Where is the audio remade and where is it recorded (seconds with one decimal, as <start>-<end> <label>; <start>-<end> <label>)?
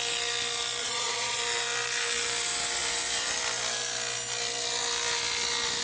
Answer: 0.0-0.8 recorded; 0.8-1.4 remade; 1.4-5.8 recorded